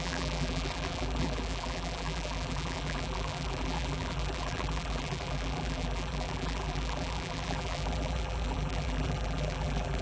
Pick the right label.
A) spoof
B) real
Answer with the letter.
A